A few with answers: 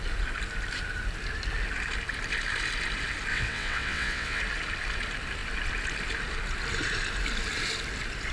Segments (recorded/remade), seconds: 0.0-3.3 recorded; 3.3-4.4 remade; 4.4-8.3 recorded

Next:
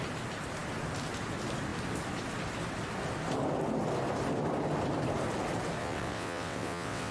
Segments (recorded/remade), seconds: 0.0-5.8 recorded; 5.8-7.1 remade

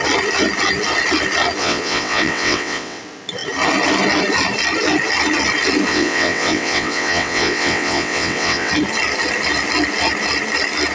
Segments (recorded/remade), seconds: 0.0-1.6 recorded; 1.6-3.0 remade; 3.0-5.9 recorded; 5.9-8.7 remade; 8.7-10.9 recorded

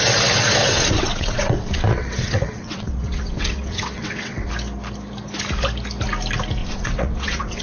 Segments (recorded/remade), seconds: 0.0-0.6 recorded; 0.6-4.5 remade; 4.5-6.6 recorded; 6.6-7.6 remade

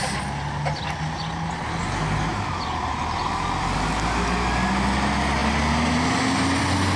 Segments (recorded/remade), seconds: 0.0-7.0 recorded

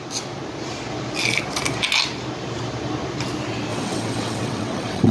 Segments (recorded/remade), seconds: 0.0-3.7 recorded; 3.7-5.1 remade

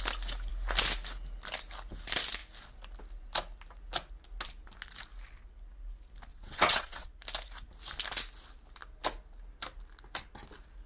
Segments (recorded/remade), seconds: 0.0-6.3 recorded; 6.3-7.2 remade; 7.2-10.9 recorded

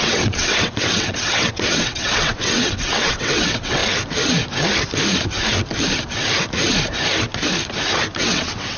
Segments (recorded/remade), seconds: 0.0-3.8 remade; 3.8-8.2 recorded; 8.2-8.8 remade